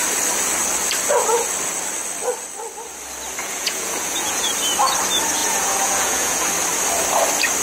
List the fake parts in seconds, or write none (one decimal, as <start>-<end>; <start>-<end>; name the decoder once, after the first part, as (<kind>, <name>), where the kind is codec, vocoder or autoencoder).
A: 3.4-4.5 (vocoder, Vocos); 5.4-6.5